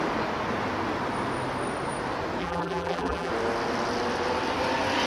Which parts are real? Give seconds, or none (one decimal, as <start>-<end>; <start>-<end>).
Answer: 0.0-2.4; 3.3-5.1